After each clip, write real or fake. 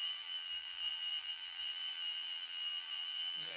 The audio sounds fake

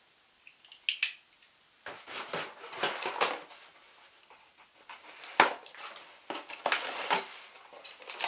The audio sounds real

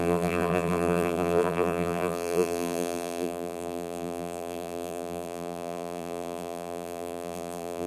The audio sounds fake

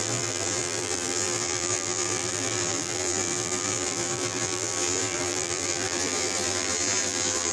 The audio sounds fake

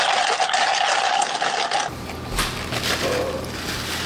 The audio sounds real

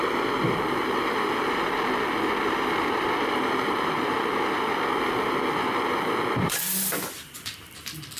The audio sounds fake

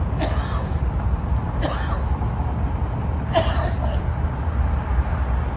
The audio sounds real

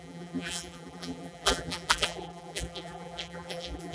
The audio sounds fake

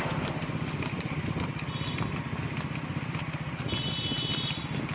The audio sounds real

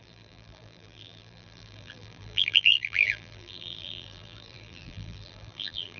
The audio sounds fake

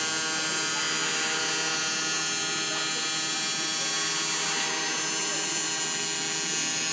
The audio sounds real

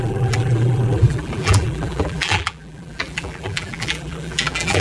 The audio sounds fake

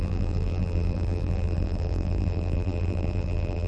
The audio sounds fake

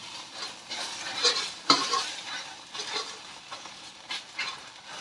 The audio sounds fake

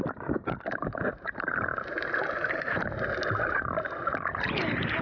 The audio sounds real